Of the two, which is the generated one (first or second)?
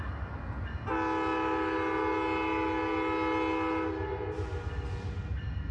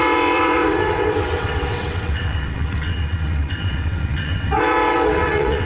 second